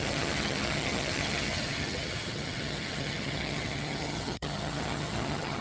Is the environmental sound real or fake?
fake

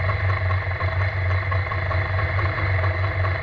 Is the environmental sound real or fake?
real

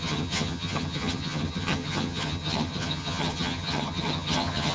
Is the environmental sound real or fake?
fake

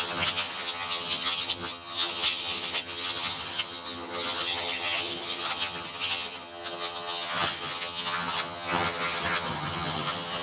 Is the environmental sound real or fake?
fake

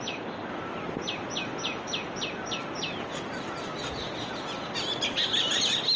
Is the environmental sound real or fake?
real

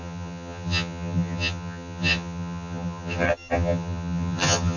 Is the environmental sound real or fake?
fake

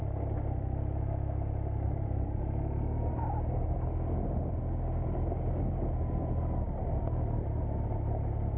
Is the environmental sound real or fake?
real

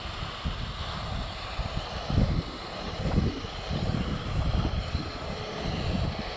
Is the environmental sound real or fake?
real